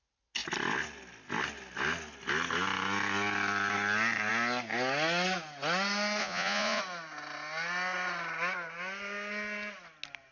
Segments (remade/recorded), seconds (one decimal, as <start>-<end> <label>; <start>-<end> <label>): 0.0-6.2 recorded; 6.2-6.8 remade; 6.8-10.3 recorded